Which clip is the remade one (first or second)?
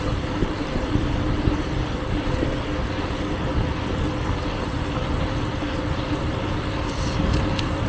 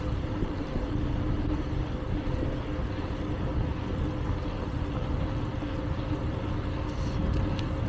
first